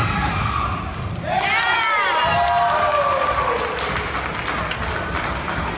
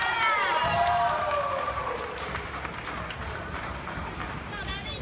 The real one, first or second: first